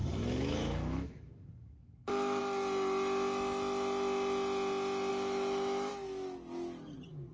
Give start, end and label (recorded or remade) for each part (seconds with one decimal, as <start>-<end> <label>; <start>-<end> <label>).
0.0-2.4 remade; 2.4-5.1 recorded; 5.1-5.9 remade; 5.9-7.3 recorded